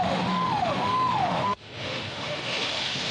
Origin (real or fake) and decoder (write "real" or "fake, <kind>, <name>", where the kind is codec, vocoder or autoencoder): fake, autoencoder, DAC-VAE